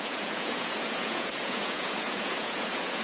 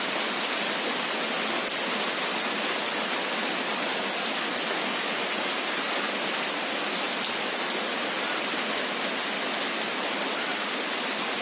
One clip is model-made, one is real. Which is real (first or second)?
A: second